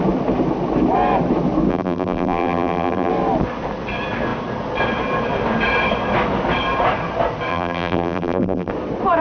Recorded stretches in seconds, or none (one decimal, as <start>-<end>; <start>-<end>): 0.0-1.7; 3.1-7.5; 8.7-9.2